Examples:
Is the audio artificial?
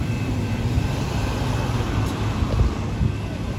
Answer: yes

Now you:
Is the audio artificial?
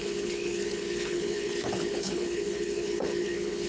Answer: yes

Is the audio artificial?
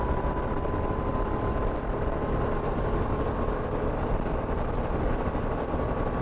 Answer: no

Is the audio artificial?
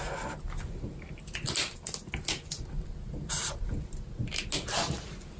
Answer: no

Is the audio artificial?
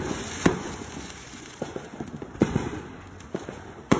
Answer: yes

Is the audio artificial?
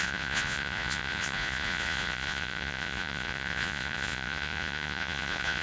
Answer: yes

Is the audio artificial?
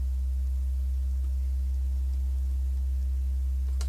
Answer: no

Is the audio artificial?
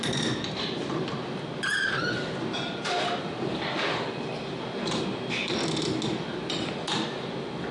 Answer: no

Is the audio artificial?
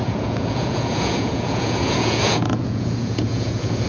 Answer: yes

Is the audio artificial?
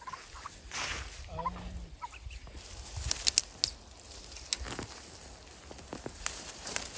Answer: no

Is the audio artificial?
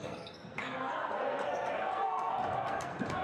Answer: yes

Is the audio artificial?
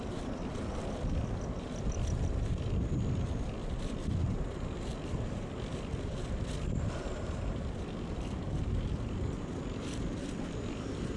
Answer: yes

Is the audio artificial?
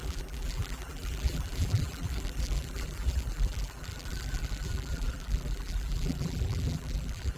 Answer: yes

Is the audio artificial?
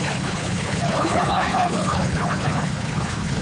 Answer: yes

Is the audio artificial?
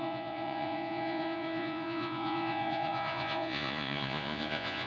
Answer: yes